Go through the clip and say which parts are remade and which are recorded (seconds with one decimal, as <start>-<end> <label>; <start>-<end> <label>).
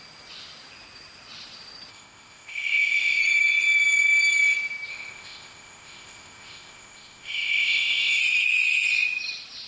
0.0-1.9 recorded; 1.9-3.2 remade; 3.2-4.9 recorded; 4.9-8.2 remade; 8.2-9.7 recorded